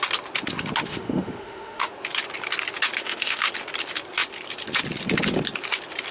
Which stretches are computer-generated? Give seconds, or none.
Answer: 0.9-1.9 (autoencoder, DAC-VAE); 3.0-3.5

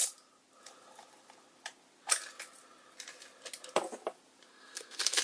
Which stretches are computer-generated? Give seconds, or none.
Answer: 4.5-5.2 (codec, SNAC)

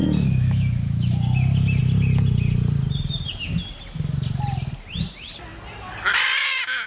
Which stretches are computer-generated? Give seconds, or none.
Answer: 0.0-1.2 (autoencoder, DAC-VAE)

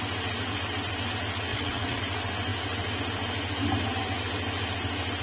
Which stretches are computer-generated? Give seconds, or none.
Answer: 1.5-2.0 (vocoder, WaveNeXt)

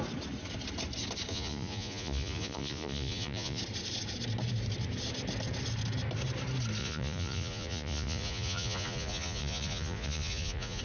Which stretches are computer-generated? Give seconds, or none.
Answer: 1.3-3.6 (vocoder, Vocos); 6.8-10.8

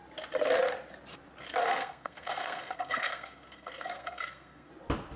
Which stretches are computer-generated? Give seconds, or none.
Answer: 1.6-4.7 (codec, SNAC)

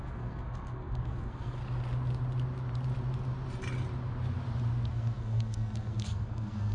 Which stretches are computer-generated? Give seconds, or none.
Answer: 0.0-1.6 (codec, SNAC); 4.9-6.7